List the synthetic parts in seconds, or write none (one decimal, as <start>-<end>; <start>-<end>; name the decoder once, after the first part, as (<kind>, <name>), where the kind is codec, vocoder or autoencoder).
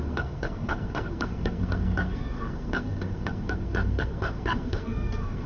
0.0-5.5 (codec, SNAC)